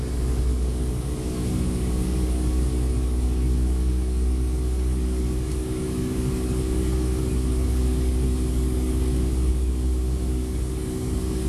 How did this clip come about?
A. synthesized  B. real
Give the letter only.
A